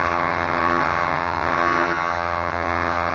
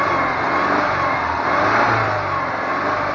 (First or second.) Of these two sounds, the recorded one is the second